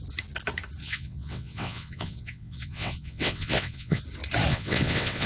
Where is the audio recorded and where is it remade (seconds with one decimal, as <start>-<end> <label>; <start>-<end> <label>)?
0.0-0.8 recorded; 0.8-4.0 remade; 4.0-4.5 recorded; 4.5-5.3 remade